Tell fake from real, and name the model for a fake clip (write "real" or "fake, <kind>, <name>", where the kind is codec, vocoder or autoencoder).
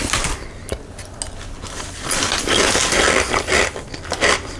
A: real